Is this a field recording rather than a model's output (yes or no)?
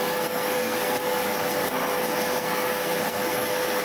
no